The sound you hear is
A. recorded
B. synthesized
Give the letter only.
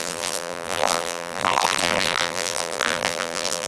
B